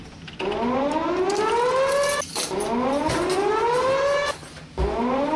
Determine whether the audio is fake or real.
real